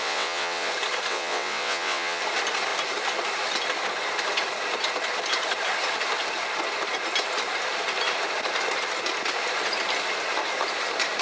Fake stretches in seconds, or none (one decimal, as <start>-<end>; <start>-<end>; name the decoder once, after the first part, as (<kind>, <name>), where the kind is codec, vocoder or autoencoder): 0.0-0.7 (vocoder, WaveNeXt); 1.1-2.2